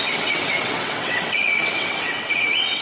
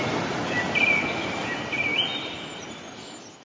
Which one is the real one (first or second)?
second